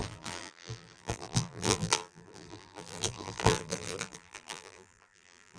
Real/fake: fake